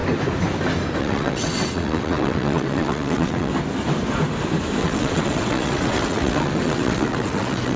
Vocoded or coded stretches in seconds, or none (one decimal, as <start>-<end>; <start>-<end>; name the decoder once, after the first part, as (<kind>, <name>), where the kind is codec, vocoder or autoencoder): 1.0-3.5 (vocoder, WaveNeXt); 4.8-7.8